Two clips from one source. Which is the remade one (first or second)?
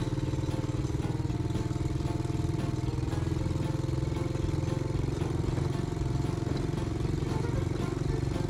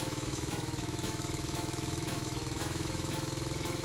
second